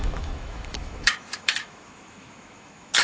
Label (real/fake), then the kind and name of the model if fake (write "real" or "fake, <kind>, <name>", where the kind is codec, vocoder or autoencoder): fake, autoencoder, DAC-VAE